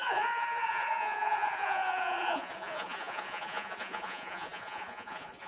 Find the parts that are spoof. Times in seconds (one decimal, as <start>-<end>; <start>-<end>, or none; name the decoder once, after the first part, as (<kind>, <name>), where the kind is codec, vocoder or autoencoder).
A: 0.0-5.5 (vocoder, Vocos)